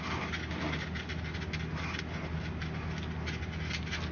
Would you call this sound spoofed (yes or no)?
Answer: no